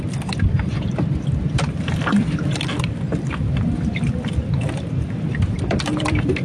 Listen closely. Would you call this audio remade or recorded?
remade